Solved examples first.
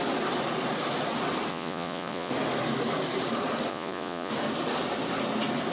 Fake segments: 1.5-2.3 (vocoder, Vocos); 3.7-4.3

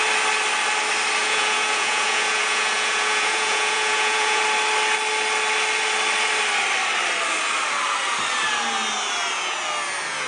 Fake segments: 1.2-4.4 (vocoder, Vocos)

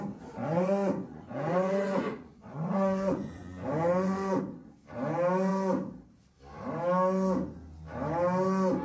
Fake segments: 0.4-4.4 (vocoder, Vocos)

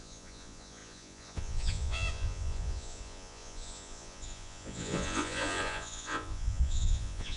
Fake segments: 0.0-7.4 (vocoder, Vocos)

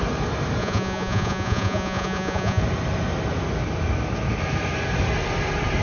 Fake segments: 0.6-2.6 (vocoder, Vocos)